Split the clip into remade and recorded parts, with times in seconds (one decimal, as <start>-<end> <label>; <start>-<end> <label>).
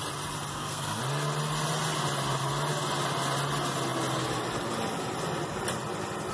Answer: 0.0-0.5 recorded; 0.5-1.0 remade; 1.0-6.3 recorded